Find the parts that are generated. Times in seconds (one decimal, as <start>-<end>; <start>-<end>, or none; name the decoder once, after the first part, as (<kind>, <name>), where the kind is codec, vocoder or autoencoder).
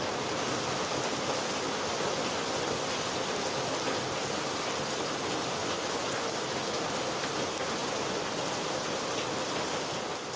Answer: 1.9-3.1 (vocoder, Vocos); 5.6-6.4; 7.8-8.4